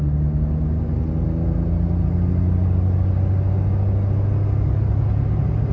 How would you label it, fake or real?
real